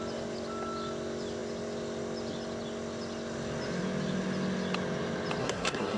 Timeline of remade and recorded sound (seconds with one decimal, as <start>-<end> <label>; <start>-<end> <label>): 0.0-5.4 recorded; 5.4-6.0 remade

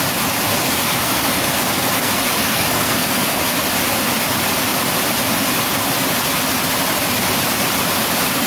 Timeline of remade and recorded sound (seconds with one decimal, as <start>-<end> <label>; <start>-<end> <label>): 0.0-0.5 recorded; 0.5-3.4 remade; 3.4-8.5 recorded

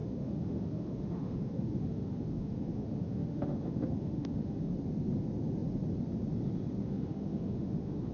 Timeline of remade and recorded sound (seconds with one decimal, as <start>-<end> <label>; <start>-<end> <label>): 0.0-4.7 remade; 4.7-6.8 recorded; 6.8-8.1 remade

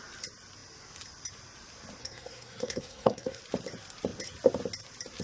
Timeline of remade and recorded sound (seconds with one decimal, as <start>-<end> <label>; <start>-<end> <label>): 0.0-2.0 recorded; 2.0-3.4 remade; 3.4-5.2 recorded

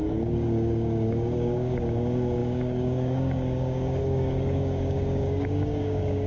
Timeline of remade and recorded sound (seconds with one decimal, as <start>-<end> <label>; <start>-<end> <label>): 0.0-6.3 remade

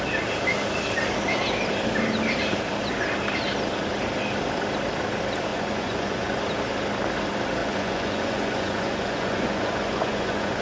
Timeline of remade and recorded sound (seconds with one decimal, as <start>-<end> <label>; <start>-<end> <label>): 0.0-5.5 recorded; 5.5-6.4 remade; 6.4-7.6 recorded; 7.6-10.6 remade

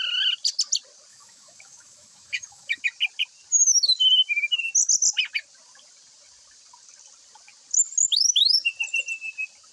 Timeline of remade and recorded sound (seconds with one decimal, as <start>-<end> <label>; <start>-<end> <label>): 0.0-1.1 recorded; 1.1-2.8 remade; 2.8-9.7 recorded